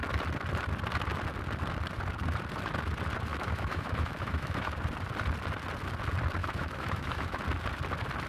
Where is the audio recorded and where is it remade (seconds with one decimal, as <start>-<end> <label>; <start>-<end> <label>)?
0.0-3.3 recorded; 3.3-4.7 remade; 4.7-6.4 recorded; 6.4-7.4 remade; 7.4-8.3 recorded